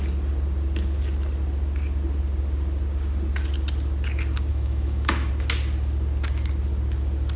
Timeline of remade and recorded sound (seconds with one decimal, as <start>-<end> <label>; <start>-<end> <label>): 0.0-4.5 recorded; 4.5-5.3 remade; 5.3-7.4 recorded